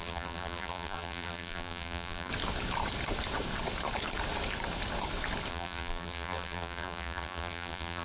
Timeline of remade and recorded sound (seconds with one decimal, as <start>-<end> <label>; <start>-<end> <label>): 0.0-2.3 remade; 2.3-5.5 recorded; 5.5-8.0 remade

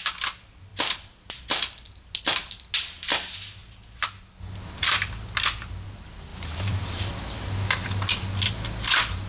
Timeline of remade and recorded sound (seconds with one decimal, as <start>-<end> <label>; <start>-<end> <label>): 0.0-6.3 recorded; 6.3-7.1 remade; 7.1-9.3 recorded